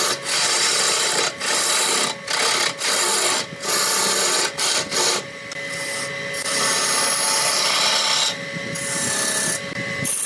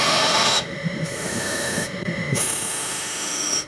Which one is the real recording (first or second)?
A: first